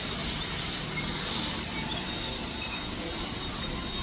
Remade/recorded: recorded